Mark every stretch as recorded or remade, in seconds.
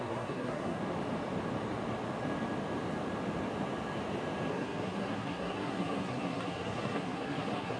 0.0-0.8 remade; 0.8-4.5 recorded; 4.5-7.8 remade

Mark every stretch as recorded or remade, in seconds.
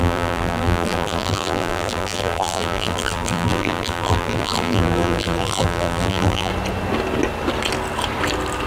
0.0-6.5 remade; 6.5-8.7 recorded